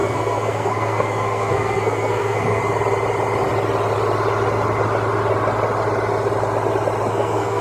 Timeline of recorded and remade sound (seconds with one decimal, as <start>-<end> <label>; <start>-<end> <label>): 0.0-2.6 remade; 2.6-7.1 recorded; 7.1-7.6 remade